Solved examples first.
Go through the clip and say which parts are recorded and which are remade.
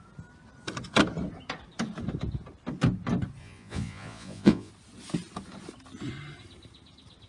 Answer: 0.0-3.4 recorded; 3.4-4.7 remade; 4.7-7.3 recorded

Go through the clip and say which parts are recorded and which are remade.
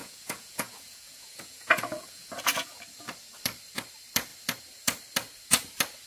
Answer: 0.0-2.7 remade; 2.7-6.1 recorded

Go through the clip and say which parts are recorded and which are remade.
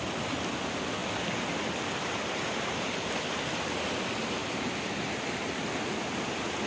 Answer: 0.0-6.7 recorded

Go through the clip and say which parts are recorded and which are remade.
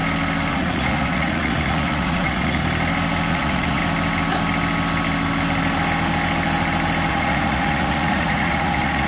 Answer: 0.0-0.5 recorded; 0.5-2.6 remade; 2.6-3.3 recorded; 3.3-3.8 remade; 3.8-7.1 recorded; 7.1-9.1 remade